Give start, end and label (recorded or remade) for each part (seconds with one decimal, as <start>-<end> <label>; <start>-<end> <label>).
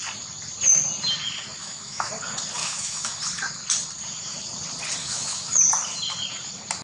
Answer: 0.0-1.6 recorded; 1.6-2.1 remade; 2.1-2.6 recorded; 2.6-3.2 remade; 3.2-5.0 recorded; 5.0-5.6 remade; 5.6-6.8 recorded